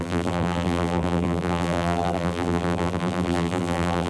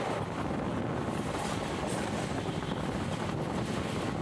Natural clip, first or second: second